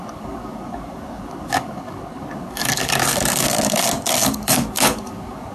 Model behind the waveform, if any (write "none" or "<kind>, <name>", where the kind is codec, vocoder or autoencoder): codec, DAC